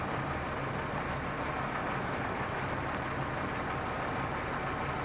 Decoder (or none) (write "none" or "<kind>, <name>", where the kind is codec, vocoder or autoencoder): none